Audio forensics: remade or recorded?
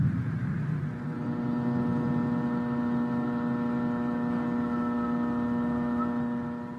recorded